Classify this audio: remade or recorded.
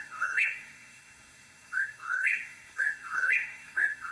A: remade